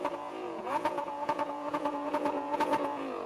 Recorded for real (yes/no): no